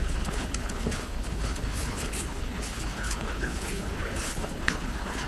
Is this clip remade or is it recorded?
remade